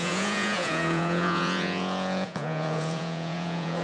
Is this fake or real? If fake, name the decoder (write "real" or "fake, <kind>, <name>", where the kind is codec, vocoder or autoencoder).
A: fake, vocoder, Vocos